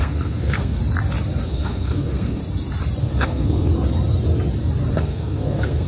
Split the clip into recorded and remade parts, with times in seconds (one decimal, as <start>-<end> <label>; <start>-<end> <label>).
0.0-0.8 remade; 0.8-1.5 recorded; 1.5-2.4 remade; 2.4-3.0 recorded; 3.0-3.7 remade; 3.7-4.9 recorded; 4.9-5.9 remade